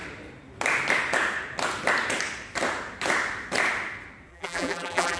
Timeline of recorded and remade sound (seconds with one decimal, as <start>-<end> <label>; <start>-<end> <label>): 0.0-4.3 recorded; 4.3-5.2 remade